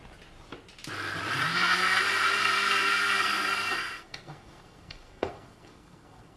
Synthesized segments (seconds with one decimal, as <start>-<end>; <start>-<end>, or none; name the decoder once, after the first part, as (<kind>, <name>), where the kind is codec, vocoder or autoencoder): 1.5-2.0 (codec, SNAC); 2.4-6.4